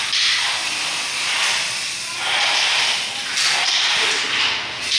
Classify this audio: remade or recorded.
recorded